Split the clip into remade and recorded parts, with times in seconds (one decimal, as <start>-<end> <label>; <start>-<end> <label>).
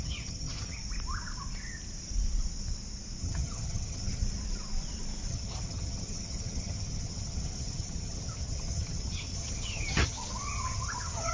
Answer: 0.0-0.8 remade; 0.8-3.2 recorded; 3.2-4.2 remade; 4.2-5.3 recorded; 5.3-11.3 remade